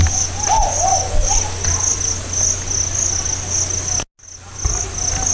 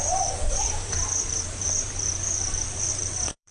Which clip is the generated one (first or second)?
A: second